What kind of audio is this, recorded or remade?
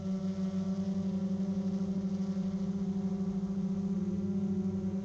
recorded